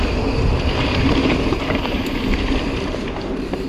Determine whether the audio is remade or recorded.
remade